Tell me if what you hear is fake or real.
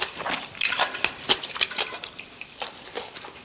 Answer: fake